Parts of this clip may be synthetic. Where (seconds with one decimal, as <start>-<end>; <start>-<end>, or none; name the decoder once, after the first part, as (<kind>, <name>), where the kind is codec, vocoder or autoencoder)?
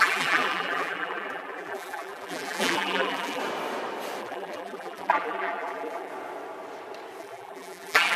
0.0-3.4 (vocoder, BigVGAN v2); 4.2-6.1; 7.2-8.2